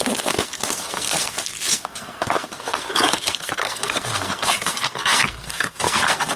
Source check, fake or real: fake